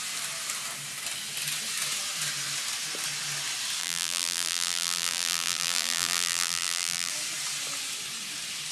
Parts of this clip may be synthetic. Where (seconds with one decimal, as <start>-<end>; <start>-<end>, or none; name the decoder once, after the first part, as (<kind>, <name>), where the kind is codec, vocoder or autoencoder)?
3.8-7.1 (vocoder, BigVGAN v2)